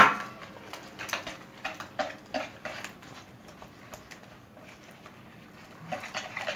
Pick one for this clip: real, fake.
real